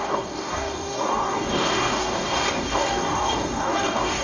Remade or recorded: remade